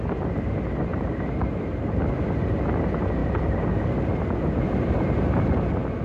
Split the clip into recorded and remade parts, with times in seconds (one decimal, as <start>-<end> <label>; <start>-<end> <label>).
0.0-0.9 recorded; 0.9-2.1 remade; 2.1-3.2 recorded; 3.2-5.4 remade; 5.4-6.0 recorded